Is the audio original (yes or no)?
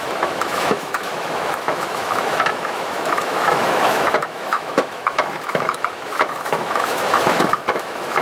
no